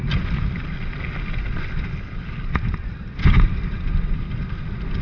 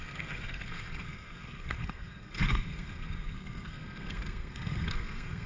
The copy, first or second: second